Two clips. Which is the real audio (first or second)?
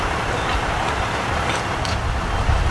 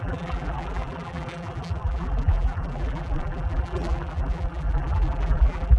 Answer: first